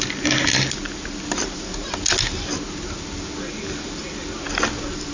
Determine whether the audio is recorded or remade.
recorded